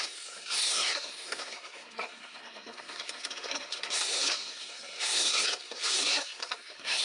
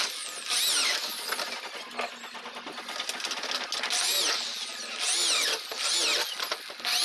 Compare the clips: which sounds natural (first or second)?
second